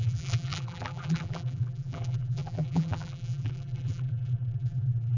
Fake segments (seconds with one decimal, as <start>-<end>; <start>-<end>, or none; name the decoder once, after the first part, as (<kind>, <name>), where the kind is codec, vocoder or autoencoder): 0.0-5.2 (vocoder, BigVGAN v2)